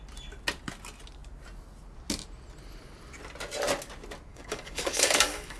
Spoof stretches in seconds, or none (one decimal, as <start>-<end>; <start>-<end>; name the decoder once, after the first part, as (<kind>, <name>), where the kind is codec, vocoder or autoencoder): 4.3-5.6 (codec, DAC)